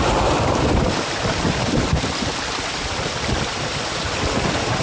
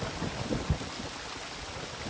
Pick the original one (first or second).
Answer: second